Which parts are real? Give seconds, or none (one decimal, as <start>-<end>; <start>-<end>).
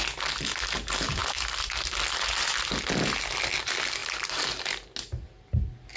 0.0-6.0